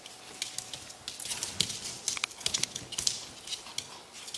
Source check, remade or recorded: recorded